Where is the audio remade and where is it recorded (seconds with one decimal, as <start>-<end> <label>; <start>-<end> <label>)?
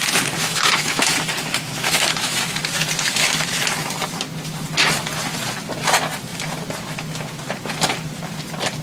0.0-0.4 recorded; 0.4-1.1 remade; 1.1-1.8 recorded; 1.8-2.4 remade; 2.4-8.8 recorded